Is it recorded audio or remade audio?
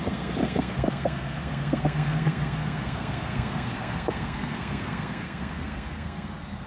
remade